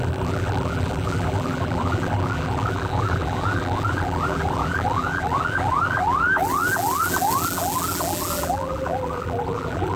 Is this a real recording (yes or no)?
no